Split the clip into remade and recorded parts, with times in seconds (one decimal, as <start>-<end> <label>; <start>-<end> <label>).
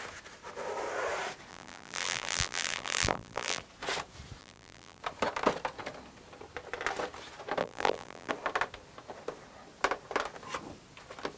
0.0-1.5 recorded; 1.5-3.6 remade; 3.6-4.4 recorded; 4.4-5.0 remade; 5.0-7.6 recorded; 7.6-8.3 remade; 8.3-11.4 recorded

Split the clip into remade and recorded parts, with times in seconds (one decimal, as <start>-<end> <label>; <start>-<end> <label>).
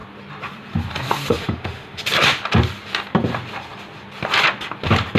0.0-1.3 recorded; 1.3-2.0 remade; 2.0-5.2 recorded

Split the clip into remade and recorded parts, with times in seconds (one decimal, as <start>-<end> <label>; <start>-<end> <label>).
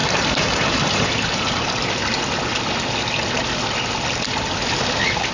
0.0-1.8 remade; 1.8-5.3 recorded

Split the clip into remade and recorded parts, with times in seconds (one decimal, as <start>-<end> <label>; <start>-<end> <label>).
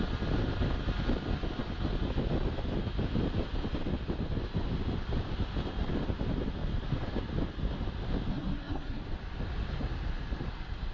0.0-8.3 recorded; 8.3-9.0 remade; 9.0-10.9 recorded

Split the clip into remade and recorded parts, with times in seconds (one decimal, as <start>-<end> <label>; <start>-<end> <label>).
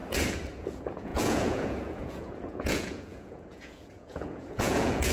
0.0-0.6 recorded; 0.6-5.1 remade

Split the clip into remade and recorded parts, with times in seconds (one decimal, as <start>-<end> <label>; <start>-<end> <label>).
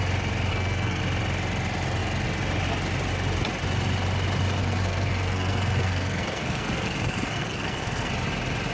0.0-0.5 recorded; 0.5-1.0 remade; 1.0-4.6 recorded; 4.6-8.1 remade; 8.1-8.7 recorded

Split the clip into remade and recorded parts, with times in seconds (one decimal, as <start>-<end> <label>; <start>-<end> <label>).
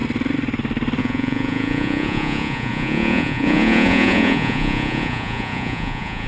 0.0-1.0 recorded; 1.0-6.3 remade